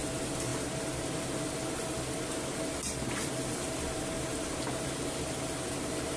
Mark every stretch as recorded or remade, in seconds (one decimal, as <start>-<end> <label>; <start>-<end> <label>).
0.0-6.2 recorded